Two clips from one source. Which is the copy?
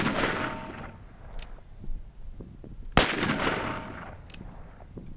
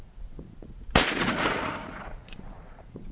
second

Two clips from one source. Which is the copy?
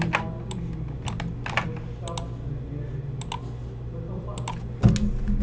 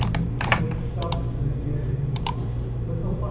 second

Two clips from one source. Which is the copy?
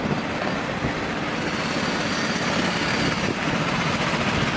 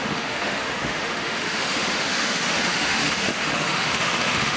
second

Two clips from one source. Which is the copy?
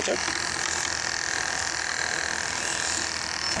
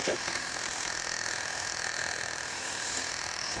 second